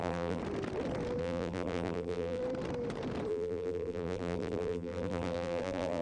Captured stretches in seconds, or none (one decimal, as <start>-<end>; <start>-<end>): 0.4-1.2; 2.4-3.3